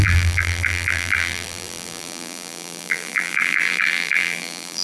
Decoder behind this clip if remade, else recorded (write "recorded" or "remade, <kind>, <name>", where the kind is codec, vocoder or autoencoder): remade, vocoder, BigVGAN v2